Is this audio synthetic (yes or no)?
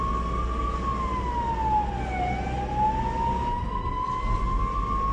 no